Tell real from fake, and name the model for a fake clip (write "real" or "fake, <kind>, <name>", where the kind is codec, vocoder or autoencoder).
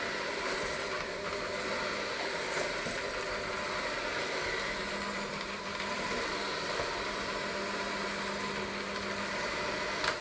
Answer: real